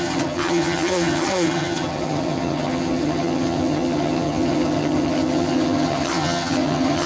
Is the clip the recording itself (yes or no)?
no